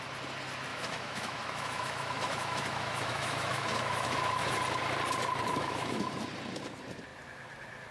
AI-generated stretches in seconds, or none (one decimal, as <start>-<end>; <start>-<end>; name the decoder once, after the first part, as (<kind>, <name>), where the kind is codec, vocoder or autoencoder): 0.7-4.6 (autoencoder, DAC-VAE); 5.5-6.1